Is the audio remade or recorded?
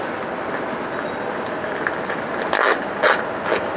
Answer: recorded